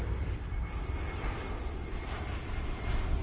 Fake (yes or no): no